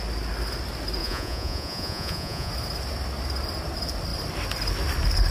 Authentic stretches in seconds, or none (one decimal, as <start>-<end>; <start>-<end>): 0.0-1.0; 2.5-5.3